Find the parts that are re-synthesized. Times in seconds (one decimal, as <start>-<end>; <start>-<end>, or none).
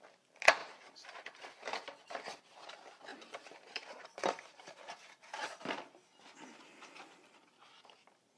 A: 0.6-2.4; 3.1-5.6